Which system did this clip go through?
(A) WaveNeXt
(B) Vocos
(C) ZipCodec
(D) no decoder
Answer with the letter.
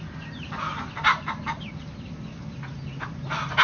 D